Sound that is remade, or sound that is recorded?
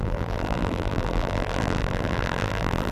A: remade